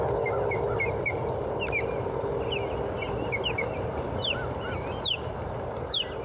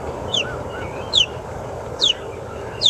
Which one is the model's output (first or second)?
second